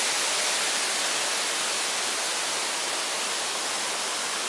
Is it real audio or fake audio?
real